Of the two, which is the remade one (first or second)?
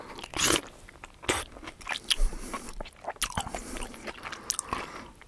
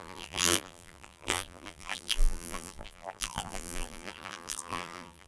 second